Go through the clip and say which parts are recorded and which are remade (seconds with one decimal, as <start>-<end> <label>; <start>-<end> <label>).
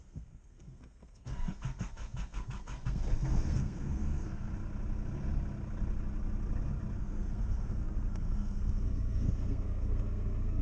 0.0-4.5 remade; 4.5-7.0 recorded; 7.0-10.6 remade